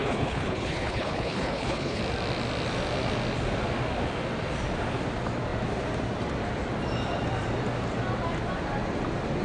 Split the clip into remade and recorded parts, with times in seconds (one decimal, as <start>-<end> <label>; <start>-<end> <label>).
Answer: 0.0-2.0 remade; 2.0-9.4 recorded